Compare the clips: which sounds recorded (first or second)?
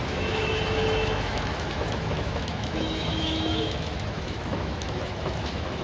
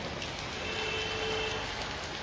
second